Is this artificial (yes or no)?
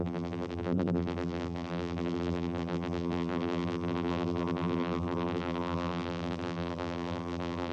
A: yes